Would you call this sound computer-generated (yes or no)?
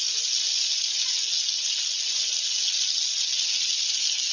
no